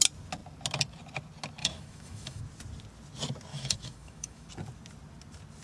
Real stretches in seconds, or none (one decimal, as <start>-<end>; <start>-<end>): 0.0-1.6; 2.4-3.5; 4.5-5.6